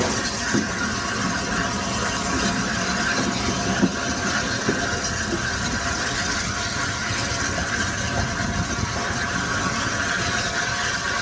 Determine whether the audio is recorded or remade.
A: recorded